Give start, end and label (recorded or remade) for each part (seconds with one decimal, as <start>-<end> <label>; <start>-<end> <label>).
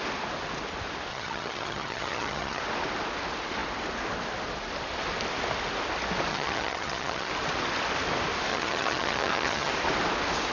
0.0-1.1 recorded; 1.1-2.6 remade; 2.6-6.3 recorded; 6.3-7.3 remade; 7.3-8.5 recorded; 8.5-9.7 remade; 9.7-10.5 recorded